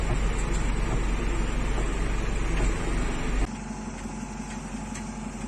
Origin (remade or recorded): recorded